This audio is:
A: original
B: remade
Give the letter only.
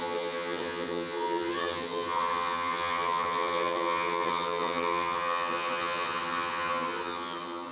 B